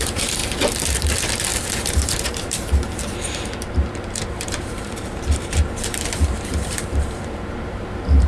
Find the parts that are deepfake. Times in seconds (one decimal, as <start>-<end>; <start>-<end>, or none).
0.0-0.4; 0.9-8.3